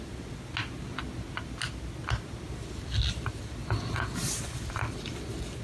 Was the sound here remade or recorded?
recorded